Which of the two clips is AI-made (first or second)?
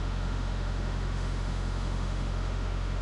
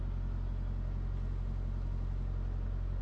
first